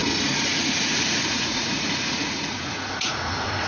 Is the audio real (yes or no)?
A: no